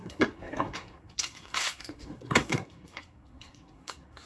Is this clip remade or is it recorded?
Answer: remade